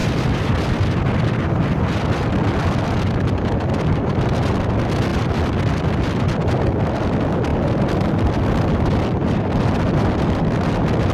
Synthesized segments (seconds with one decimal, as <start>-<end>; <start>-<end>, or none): 0.0-1.0; 5.1-6.5; 9.2-10.7